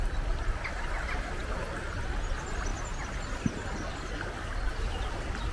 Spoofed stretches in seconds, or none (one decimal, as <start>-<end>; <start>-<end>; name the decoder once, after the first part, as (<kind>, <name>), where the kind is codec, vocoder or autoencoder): none

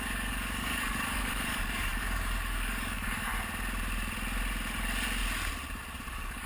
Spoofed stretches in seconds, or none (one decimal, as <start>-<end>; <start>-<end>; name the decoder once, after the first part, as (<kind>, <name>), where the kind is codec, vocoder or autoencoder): 0.0-3.3 (codec, DAC); 6.1-6.5